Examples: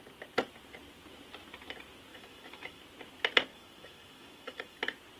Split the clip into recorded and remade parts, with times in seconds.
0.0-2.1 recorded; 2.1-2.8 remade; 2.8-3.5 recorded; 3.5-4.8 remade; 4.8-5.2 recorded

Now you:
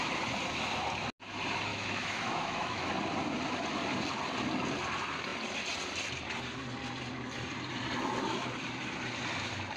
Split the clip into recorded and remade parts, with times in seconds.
0.0-1.7 recorded; 1.7-2.9 remade; 2.9-9.8 recorded

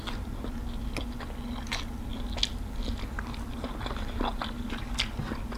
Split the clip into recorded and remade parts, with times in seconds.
0.0-5.6 recorded

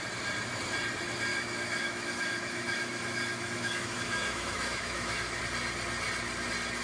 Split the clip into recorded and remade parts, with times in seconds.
0.0-1.3 recorded; 1.3-5.4 remade; 5.4-6.8 recorded

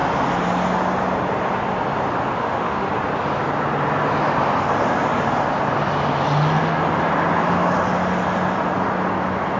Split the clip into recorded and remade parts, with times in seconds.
0.0-2.4 recorded; 2.4-2.9 remade; 2.9-9.6 recorded

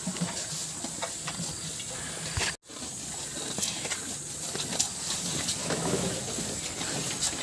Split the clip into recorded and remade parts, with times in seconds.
0.0-5.6 recorded; 5.6-6.1 remade; 6.1-7.4 recorded

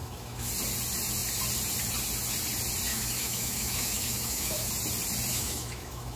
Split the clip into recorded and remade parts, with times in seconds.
0.0-0.5 remade; 0.5-2.9 recorded; 2.9-4.7 remade; 4.7-5.3 recorded; 5.3-6.2 remade